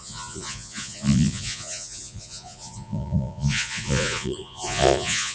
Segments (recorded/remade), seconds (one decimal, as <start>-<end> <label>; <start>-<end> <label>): 0.0-5.3 remade